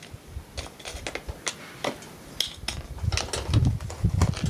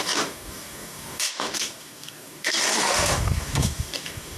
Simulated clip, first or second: second